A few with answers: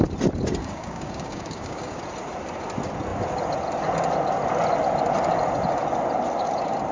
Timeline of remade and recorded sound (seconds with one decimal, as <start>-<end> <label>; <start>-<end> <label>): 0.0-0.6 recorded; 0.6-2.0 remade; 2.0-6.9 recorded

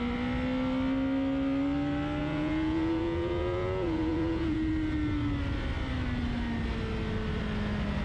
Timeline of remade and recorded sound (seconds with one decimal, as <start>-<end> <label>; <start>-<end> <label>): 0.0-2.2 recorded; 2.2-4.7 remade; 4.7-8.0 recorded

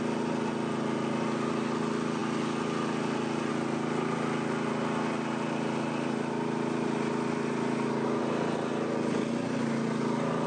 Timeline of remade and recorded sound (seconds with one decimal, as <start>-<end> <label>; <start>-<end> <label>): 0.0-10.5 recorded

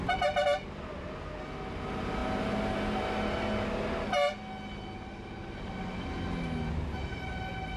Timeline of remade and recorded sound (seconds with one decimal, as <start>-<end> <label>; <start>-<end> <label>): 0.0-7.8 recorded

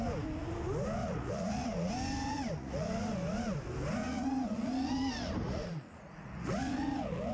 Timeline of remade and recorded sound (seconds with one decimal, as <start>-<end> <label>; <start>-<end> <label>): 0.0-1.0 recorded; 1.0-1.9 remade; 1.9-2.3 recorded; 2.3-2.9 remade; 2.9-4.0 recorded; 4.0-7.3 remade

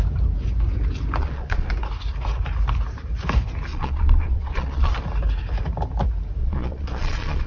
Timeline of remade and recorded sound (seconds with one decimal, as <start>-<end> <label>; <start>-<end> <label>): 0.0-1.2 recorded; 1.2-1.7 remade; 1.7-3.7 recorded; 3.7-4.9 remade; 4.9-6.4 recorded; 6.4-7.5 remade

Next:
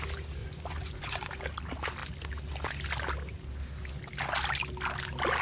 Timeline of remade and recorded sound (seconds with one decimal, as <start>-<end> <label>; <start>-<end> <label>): 0.0-0.4 recorded; 0.4-1.3 remade; 1.3-5.4 recorded

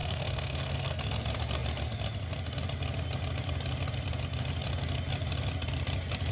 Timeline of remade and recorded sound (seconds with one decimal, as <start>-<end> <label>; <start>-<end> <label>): 0.0-1.0 remade; 1.0-6.3 recorded